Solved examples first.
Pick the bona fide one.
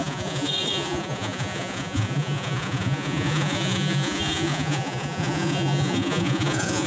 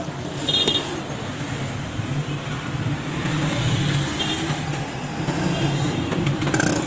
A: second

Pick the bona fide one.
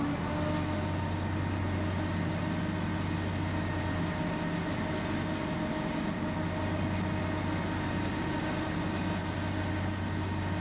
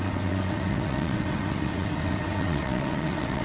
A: first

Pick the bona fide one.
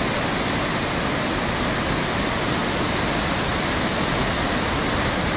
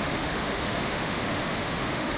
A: first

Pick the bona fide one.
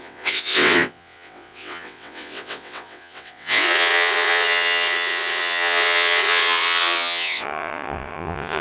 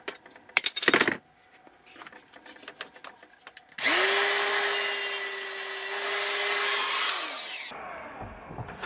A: second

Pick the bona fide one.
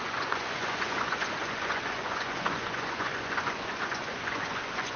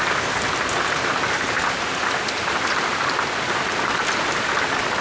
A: second